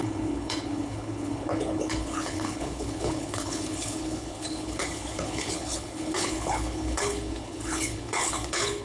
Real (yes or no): no